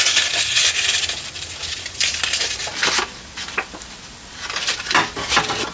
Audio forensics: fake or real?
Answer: real